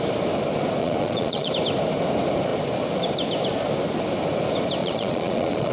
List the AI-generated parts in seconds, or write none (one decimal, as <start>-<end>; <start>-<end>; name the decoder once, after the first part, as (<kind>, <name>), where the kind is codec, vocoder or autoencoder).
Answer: 0.8-1.5 (vocoder, Vocos); 4.8-5.7